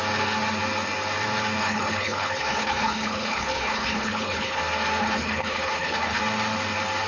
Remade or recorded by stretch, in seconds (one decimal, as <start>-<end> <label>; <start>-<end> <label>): 0.0-1.6 recorded; 1.6-4.6 remade; 4.6-5.0 recorded; 5.0-6.2 remade; 6.2-7.1 recorded